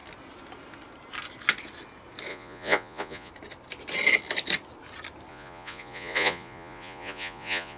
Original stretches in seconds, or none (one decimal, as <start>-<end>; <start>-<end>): 0.0-2.3; 3.3-5.3